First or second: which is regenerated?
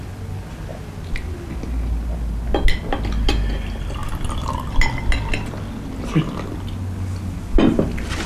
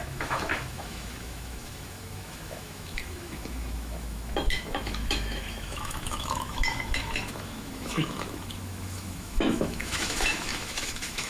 second